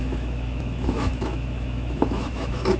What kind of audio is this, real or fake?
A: fake